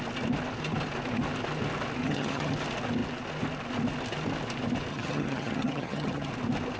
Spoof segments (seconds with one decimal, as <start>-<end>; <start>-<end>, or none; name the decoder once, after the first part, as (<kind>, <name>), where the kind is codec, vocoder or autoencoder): 2.0-2.5 (vocoder, HiFi-GAN); 4.9-6.3